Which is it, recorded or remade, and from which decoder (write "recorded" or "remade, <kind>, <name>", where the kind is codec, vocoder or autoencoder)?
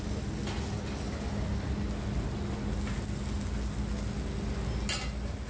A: recorded